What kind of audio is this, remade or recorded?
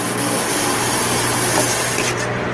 recorded